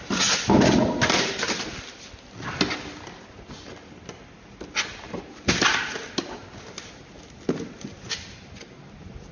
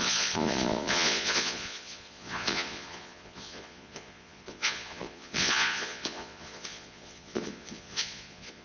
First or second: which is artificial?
second